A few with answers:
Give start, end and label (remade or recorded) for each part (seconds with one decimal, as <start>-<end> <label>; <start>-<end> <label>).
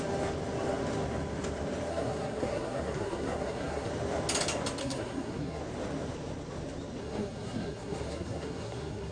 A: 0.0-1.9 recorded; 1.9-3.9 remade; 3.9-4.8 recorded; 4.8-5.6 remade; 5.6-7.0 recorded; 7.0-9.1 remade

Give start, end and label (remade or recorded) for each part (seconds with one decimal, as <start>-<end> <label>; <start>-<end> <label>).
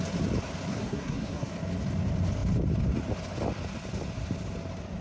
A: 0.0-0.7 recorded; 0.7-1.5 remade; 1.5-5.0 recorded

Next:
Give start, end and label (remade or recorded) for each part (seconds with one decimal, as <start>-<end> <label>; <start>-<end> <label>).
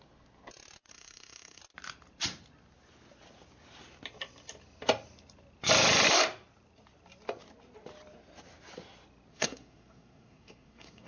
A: 0.0-0.9 recorded; 0.9-1.6 remade; 1.6-9.3 recorded; 9.3-11.1 remade